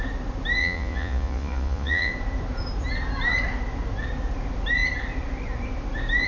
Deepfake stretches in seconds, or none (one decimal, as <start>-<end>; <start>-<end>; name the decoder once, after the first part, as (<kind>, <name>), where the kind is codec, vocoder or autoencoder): 0.6-2.1 (vocoder, Vocos)